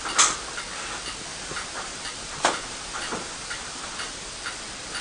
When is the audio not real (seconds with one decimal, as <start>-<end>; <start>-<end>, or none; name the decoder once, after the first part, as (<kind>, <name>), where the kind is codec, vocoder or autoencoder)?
1.3-4.3 (vocoder, BigVGAN v2)